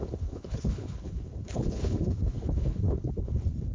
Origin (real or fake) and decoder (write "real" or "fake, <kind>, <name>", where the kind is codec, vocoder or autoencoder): fake, codec, HILCodec